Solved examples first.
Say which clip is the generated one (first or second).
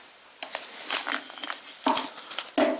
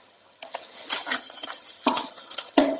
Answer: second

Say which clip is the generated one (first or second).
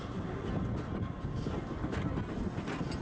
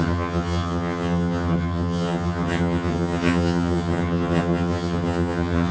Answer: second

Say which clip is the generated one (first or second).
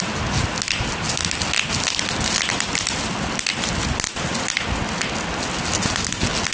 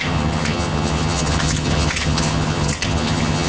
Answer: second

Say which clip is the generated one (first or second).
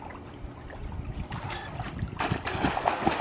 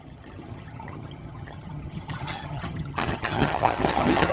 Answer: second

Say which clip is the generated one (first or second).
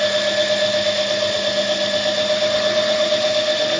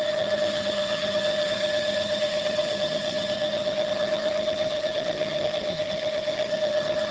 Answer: second